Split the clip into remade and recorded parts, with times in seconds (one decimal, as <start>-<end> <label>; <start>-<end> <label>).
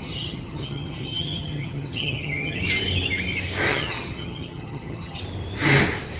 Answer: 0.0-2.6 remade; 2.6-3.7 recorded; 3.7-5.2 remade; 5.2-6.2 recorded